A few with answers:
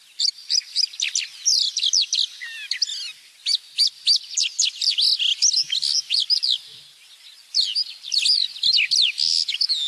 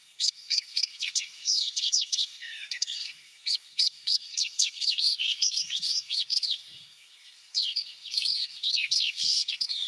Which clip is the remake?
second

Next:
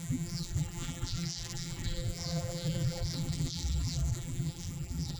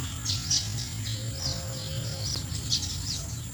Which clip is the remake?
first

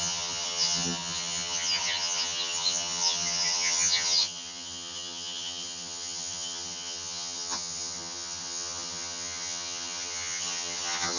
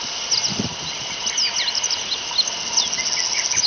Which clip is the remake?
first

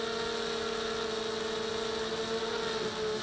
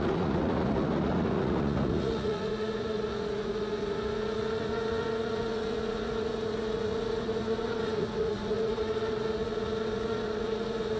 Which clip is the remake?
second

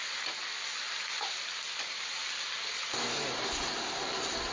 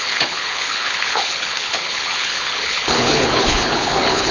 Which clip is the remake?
second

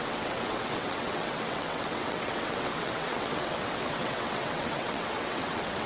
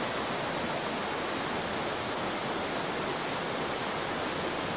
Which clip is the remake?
first